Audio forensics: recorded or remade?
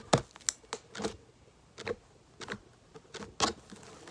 recorded